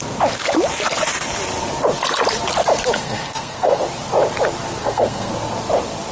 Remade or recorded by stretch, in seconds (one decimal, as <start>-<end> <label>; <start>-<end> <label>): 0.0-3.0 recorded; 3.0-3.8 remade; 3.8-4.8 recorded; 4.8-5.3 remade; 5.3-6.1 recorded